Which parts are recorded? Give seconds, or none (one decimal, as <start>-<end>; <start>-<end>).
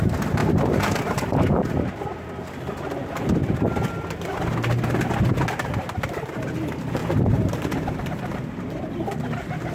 0.0-0.4; 2.4-7.0; 8.9-9.7